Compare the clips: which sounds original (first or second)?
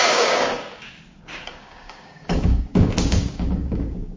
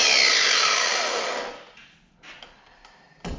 second